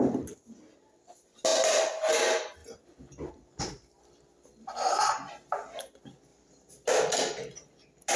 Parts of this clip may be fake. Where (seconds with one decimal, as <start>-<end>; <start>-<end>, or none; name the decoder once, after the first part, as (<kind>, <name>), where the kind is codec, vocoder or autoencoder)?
6.3-7.0 (vocoder, BigVGAN v2)